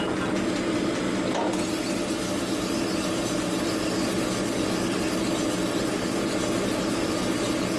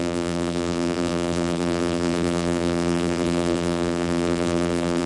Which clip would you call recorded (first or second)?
first